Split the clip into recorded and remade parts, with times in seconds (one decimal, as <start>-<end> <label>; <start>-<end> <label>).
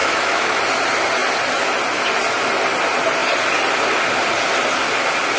0.0-0.6 remade; 0.6-5.4 recorded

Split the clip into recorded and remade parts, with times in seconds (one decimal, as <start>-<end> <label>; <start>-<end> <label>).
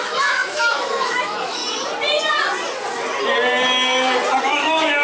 0.0-1.6 remade; 1.6-4.4 recorded; 4.4-5.0 remade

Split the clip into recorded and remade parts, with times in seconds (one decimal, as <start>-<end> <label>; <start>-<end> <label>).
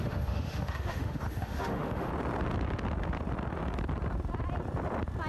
0.0-2.1 remade; 2.1-5.3 recorded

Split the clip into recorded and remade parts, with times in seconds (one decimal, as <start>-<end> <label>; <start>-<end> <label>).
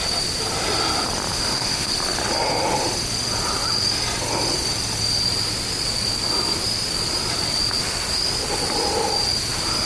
0.0-1.3 recorded; 1.3-1.9 remade; 1.9-9.9 recorded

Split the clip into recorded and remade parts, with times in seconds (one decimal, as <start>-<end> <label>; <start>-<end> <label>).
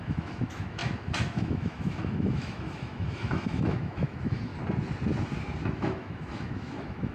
0.0-4.5 remade; 4.5-5.6 recorded; 5.6-7.1 remade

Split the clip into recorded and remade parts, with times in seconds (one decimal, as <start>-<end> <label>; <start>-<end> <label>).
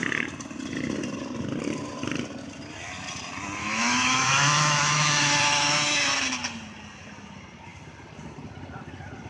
0.0-3.6 recorded; 3.6-6.1 remade; 6.1-9.3 recorded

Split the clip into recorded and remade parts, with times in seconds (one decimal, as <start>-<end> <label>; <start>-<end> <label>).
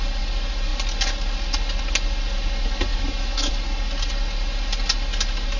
0.0-2.9 recorded; 2.9-3.5 remade; 3.5-5.6 recorded